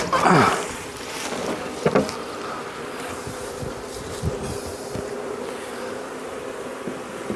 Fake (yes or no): no